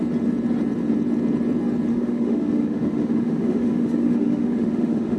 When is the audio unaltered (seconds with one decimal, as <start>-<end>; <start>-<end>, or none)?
0.0-1.9